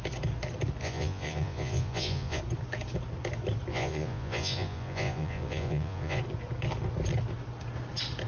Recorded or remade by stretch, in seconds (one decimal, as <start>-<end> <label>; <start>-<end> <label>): 0.0-0.8 recorded; 0.8-2.4 remade; 2.4-3.7 recorded; 3.7-6.2 remade; 6.2-8.3 recorded